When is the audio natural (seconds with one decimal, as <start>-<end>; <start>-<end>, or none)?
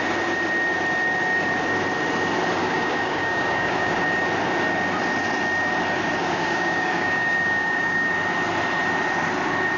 0.0-2.6; 4.0-6.2; 8.1-9.8